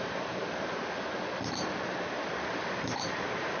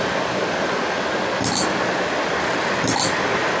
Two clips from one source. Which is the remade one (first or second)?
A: first